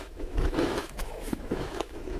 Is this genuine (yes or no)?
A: no